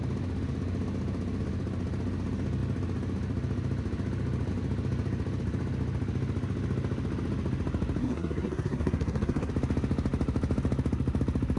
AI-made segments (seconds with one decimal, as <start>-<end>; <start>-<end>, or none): 8.0-9.5